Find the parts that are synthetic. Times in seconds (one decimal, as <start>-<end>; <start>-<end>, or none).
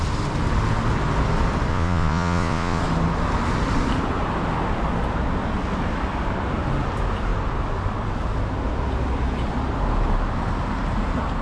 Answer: 1.7-2.8